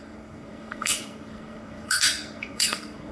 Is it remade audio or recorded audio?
remade